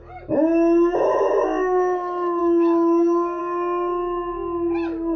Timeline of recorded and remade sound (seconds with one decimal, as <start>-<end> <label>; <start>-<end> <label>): 0.0-2.4 recorded; 2.4-3.4 remade; 3.4-5.2 recorded